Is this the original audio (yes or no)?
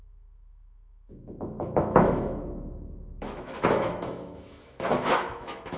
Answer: no